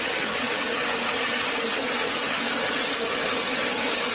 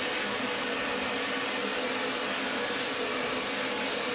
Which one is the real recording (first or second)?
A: second